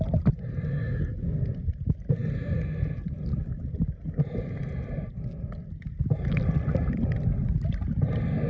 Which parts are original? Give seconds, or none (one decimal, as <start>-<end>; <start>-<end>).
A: 0.0-8.5